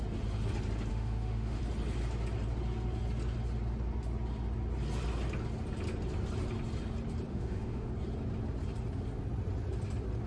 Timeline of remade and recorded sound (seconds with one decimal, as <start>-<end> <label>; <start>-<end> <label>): 0.0-0.9 recorded; 0.9-1.6 remade; 1.6-7.3 recorded; 7.3-7.9 remade; 7.9-10.3 recorded